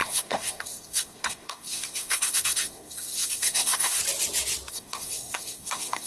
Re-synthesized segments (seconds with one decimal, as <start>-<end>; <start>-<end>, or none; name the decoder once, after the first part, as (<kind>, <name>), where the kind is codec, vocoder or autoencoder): 0.0-4.0 (codec, SNAC); 4.7-6.1